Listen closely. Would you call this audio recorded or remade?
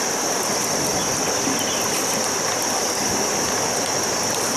recorded